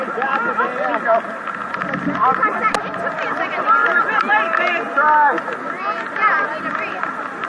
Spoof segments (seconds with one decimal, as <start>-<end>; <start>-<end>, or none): none